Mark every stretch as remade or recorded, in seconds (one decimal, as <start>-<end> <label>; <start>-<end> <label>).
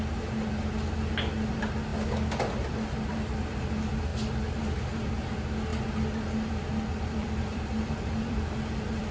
0.0-7.2 recorded; 7.2-9.1 remade